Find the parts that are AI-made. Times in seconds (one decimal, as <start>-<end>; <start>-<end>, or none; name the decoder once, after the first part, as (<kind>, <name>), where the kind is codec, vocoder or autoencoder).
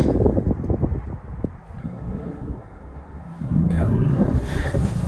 1.8-5.1 (codec, SNAC)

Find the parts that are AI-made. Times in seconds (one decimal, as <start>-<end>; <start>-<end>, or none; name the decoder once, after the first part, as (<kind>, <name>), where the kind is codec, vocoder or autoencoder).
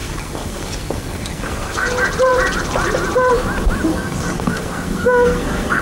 0.0-1.9 (codec, SNAC); 3.9-5.8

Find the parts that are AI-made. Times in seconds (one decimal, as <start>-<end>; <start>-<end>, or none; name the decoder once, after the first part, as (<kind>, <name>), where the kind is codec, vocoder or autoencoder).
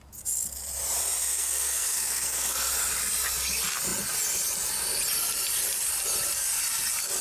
1.3-2.7 (codec, SNAC)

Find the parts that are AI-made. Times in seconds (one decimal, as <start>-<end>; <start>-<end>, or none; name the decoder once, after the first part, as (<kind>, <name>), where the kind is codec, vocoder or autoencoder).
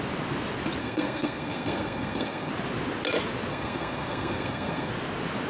0.8-2.5 (codec, SNAC); 3.5-4.9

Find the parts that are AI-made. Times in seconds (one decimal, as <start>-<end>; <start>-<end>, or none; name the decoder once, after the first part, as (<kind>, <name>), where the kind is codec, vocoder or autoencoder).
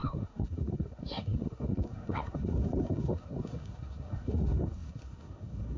0.0-5.8 (codec, SNAC)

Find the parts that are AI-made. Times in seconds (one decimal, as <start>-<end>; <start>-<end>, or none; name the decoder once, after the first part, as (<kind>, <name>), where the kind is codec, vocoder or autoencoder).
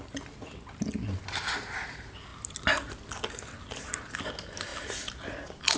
none